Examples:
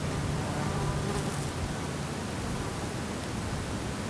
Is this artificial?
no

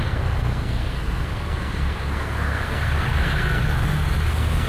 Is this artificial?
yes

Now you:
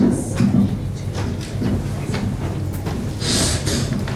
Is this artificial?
no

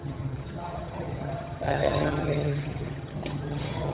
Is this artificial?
yes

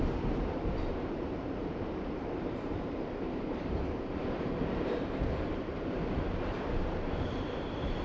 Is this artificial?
yes